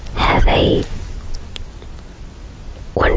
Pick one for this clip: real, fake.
real